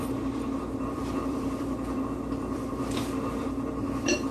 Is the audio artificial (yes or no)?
yes